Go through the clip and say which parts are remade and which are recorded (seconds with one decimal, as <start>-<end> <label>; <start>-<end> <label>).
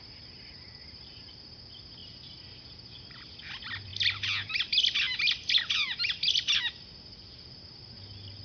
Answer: 0.0-8.4 recorded